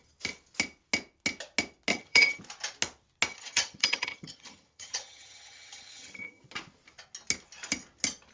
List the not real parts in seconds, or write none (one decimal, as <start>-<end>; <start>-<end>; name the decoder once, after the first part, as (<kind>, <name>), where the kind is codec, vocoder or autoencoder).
1.9-2.4 (vocoder, HiFi-GAN); 3.3-6.4